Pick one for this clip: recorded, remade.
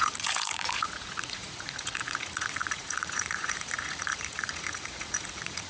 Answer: remade